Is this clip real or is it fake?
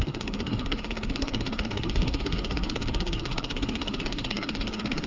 fake